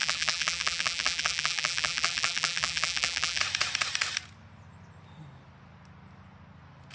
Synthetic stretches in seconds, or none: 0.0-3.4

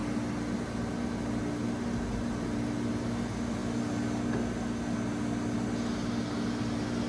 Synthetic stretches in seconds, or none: none